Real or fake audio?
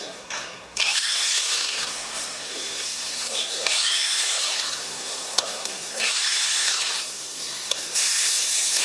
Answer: fake